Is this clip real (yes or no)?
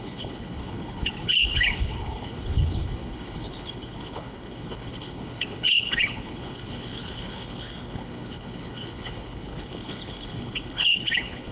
no